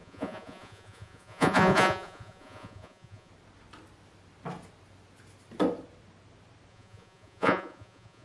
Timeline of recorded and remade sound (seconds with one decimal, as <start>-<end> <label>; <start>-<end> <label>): 0.0-3.3 remade; 3.3-6.7 recorded; 6.7-8.2 remade